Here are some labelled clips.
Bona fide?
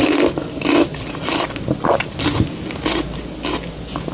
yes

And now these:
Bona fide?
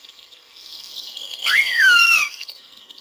no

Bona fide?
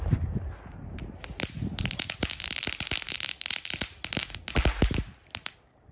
yes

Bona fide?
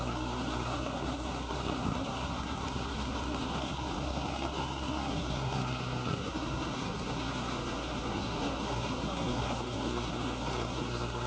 no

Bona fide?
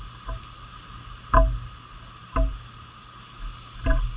yes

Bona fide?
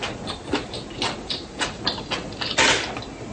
yes